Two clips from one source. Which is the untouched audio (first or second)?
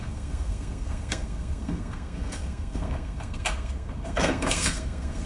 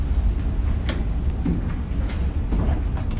second